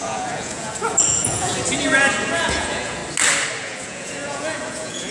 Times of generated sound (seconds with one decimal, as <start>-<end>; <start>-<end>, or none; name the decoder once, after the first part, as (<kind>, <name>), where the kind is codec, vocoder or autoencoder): 0.0-1.5 (vocoder, Vocos); 2.1-3.0; 3.6-5.1